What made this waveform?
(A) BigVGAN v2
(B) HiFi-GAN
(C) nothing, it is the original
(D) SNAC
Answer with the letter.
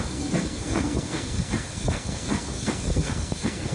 D